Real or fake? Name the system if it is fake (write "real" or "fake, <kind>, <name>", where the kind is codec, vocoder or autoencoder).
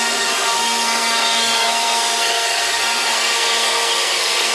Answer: fake, codec, SNAC